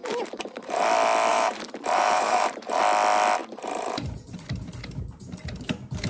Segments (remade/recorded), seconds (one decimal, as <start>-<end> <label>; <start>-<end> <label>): 0.0-0.8 remade; 0.8-1.3 recorded; 1.3-2.8 remade; 2.8-3.4 recorded; 3.4-4.5 remade; 4.5-6.1 recorded